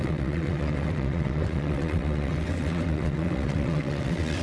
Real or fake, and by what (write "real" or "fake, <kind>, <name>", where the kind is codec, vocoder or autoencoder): fake, vocoder, WaveNeXt